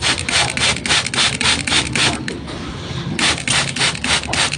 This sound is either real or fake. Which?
real